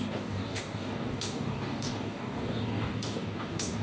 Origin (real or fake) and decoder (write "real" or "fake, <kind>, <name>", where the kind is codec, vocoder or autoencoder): fake, codec, DAC